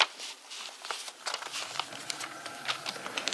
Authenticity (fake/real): real